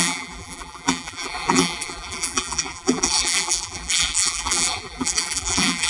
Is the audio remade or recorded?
remade